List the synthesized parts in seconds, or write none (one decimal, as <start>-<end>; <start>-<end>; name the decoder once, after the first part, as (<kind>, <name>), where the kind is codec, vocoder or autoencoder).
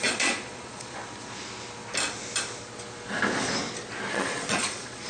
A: 0.0-1.0 (vocoder, Vocos); 4.1-5.1